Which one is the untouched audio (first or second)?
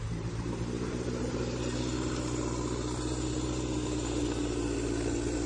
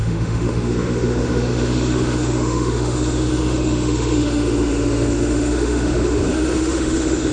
first